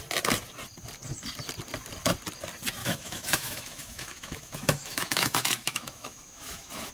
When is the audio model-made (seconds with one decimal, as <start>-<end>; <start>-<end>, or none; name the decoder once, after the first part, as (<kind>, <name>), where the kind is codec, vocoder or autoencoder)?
2.8-6.9 (autoencoder, DAC-VAE)